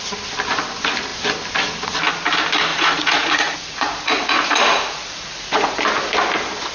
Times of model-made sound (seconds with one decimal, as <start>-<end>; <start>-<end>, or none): 2.7-5.8